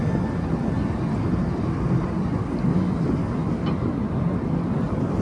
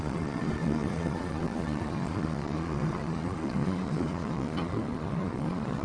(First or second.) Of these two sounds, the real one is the first